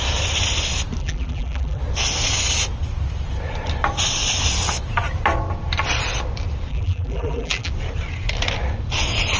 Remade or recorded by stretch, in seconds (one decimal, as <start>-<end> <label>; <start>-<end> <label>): 0.0-1.0 recorded; 1.0-1.8 remade; 1.8-6.7 recorded; 6.7-7.7 remade; 7.7-9.4 recorded